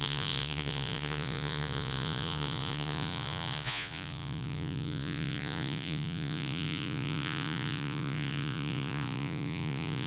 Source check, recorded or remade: remade